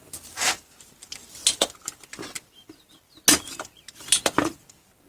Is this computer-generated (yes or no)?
no